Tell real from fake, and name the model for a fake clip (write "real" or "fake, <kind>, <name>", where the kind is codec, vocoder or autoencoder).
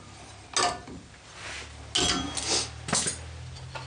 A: real